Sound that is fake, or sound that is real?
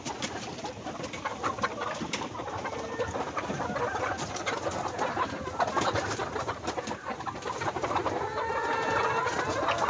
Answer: real